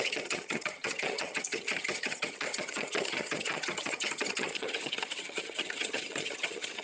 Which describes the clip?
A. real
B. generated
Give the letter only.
B